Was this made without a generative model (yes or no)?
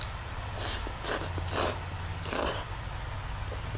yes